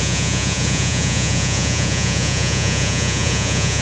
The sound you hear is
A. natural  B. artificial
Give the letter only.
B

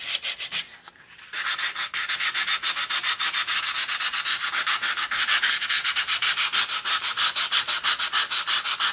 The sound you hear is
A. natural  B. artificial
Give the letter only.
A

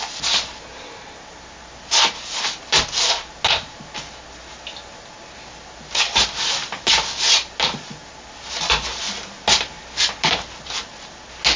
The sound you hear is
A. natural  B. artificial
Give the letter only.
A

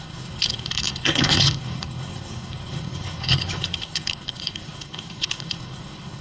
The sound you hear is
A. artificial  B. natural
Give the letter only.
A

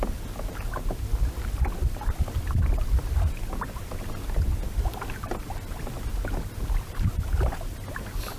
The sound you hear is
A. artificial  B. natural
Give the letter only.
B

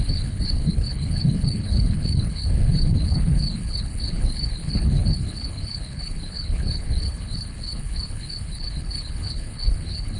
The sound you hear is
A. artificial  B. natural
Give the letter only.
A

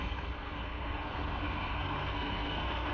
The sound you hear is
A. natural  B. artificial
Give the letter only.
B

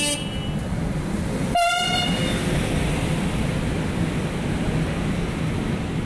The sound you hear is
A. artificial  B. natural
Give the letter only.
B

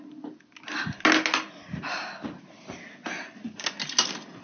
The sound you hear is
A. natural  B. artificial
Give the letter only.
A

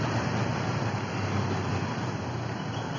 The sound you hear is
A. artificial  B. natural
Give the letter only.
B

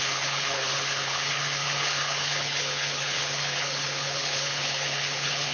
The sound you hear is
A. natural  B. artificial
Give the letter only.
B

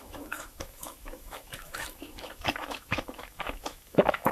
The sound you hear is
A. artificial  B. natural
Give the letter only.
A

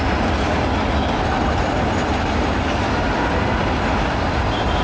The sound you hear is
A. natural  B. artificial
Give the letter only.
A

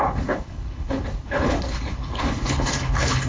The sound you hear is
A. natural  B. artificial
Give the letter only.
B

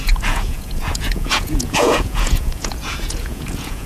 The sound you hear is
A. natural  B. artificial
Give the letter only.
B